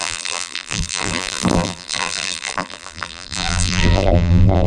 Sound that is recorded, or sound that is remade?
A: remade